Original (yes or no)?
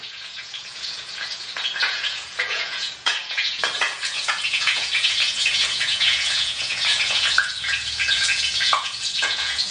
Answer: no